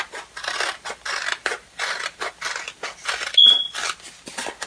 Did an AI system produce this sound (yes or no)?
no